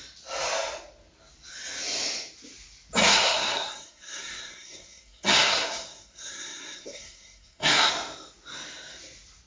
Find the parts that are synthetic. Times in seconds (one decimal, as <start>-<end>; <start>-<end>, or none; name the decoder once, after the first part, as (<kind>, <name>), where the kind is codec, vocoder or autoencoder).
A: 3.0-7.9 (codec, SNAC)